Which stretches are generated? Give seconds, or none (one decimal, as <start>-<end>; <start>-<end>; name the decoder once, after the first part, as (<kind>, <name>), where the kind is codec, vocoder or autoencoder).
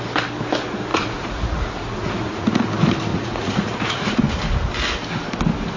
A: 0.9-2.6 (vocoder, Vocos); 3.1-4.2